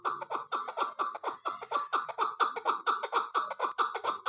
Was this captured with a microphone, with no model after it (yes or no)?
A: yes